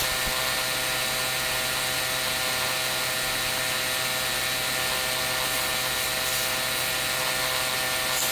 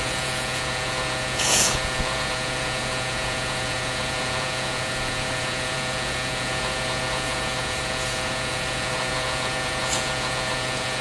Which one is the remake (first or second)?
second